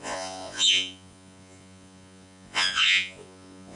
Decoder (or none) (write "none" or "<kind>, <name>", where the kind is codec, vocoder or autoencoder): vocoder, Vocos